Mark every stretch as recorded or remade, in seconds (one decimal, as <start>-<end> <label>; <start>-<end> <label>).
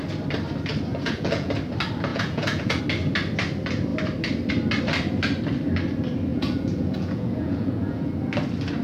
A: 0.0-0.9 recorded; 0.9-1.5 remade; 1.5-2.1 recorded; 2.1-2.8 remade; 2.8-6.3 recorded; 6.3-8.1 remade; 8.1-8.8 recorded